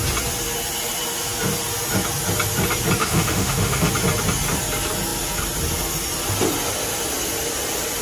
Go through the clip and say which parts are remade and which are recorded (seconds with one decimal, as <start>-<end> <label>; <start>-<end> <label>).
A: 0.0-3.0 recorded; 3.0-3.9 remade; 3.9-8.0 recorded